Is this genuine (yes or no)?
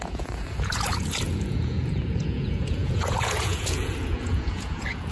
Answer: no